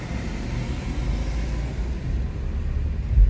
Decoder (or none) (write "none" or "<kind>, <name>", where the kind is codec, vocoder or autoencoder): none